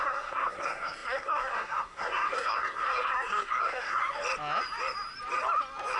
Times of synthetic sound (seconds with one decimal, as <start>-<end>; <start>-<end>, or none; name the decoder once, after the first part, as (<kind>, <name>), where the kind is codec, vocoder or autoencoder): 0.0-4.0 (codec, SNAC)